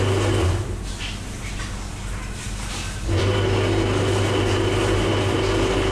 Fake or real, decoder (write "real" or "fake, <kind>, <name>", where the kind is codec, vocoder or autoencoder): real